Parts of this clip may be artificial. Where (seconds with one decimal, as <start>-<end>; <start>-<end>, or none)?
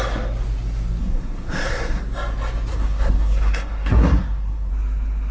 1.0-2.0; 2.7-4.7